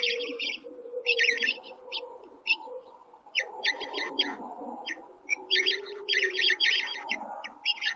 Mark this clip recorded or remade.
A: remade